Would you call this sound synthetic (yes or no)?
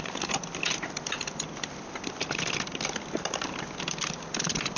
yes